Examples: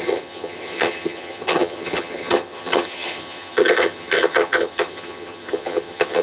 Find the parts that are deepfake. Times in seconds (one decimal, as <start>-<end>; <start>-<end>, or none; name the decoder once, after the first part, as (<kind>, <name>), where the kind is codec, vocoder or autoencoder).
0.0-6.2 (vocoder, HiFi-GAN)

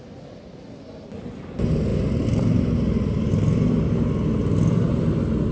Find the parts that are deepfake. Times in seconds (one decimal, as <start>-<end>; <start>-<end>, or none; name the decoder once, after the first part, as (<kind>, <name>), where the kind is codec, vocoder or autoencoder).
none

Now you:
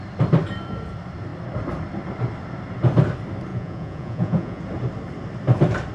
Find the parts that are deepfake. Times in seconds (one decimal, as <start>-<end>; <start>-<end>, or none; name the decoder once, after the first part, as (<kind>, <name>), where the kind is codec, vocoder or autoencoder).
3.5-4.6 (vocoder, Vocos)

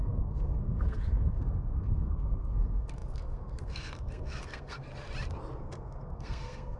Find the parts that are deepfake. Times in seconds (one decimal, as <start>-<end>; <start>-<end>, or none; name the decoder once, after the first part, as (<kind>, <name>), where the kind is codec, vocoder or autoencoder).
0.0-4.9 (codec, SNAC); 5.6-6.8

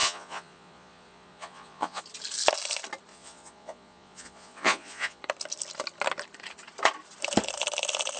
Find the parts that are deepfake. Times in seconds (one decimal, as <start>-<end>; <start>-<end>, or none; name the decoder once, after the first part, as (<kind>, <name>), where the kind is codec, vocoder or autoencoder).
0.0-2.0 (vocoder, Vocos); 3.1-5.2

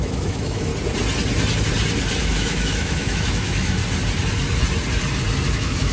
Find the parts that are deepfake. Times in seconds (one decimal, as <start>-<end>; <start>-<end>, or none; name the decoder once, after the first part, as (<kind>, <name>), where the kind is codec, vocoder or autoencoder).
0.0-0.7 (autoencoder, DAC-VAE); 2.2-3.8; 5.5-5.9

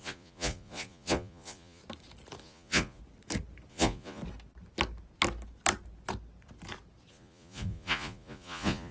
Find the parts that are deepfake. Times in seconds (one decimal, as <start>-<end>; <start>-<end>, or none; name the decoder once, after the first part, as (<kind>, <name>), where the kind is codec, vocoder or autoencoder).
0.0-1.8 (vocoder, Vocos); 2.4-3.0; 3.7-4.2; 7.1-8.9

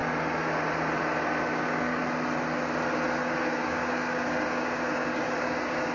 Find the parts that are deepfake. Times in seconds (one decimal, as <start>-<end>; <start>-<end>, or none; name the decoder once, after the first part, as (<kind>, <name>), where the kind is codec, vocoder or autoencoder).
1.5-2.0 (codec, DAC); 3.2-5.9